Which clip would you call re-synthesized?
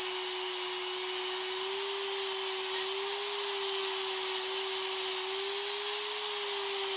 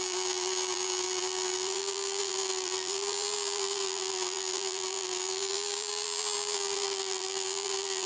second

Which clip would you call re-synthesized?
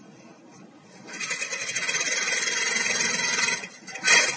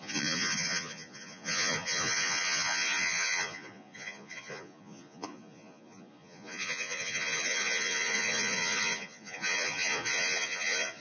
second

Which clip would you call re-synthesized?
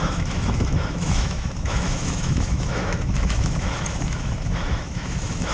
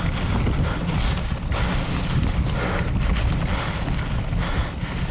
first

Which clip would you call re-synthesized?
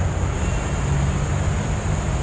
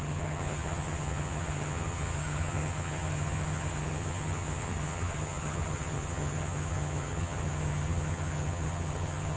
second